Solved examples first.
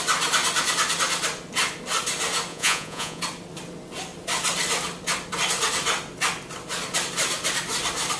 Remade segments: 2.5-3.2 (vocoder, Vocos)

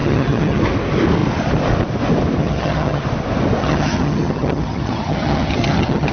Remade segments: 0.0-0.6 (vocoder, HiFi-GAN); 2.4-3.0; 3.6-6.1

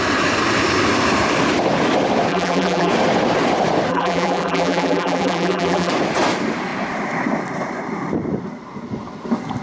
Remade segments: 2.3-2.9 (vocoder, BigVGAN v2); 3.9-5.9

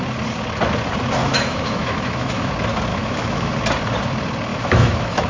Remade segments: 1.2-2.5 (autoencoder, DAC-VAE); 2.9-3.5; 4.5-5.3